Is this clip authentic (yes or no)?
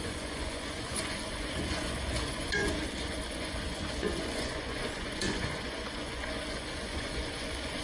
no